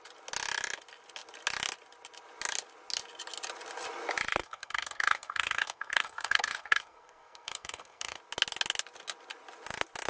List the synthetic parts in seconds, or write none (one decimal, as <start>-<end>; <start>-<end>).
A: 4.4-8.2